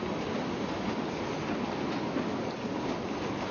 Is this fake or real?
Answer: real